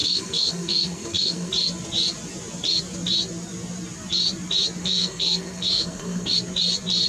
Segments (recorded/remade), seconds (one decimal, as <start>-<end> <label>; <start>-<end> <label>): 0.0-1.5 remade; 1.5-4.8 recorded; 4.8-6.3 remade; 6.3-7.1 recorded